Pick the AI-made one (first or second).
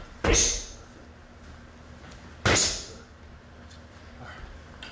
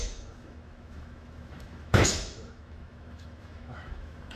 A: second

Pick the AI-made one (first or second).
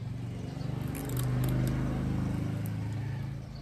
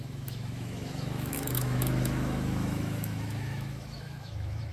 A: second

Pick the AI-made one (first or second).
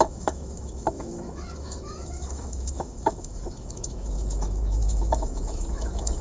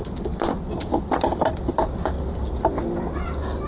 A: first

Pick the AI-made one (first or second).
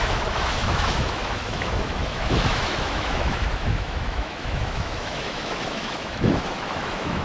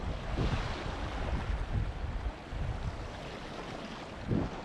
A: first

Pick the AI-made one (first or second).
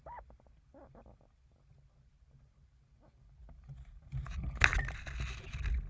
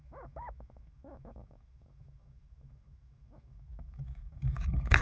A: second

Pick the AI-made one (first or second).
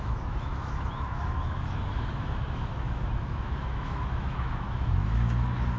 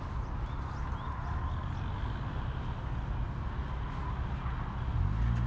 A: first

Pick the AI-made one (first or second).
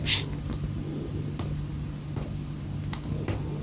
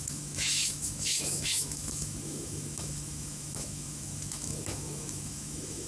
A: second